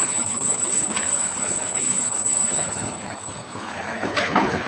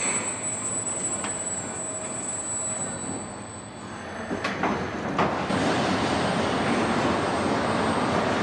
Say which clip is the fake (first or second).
first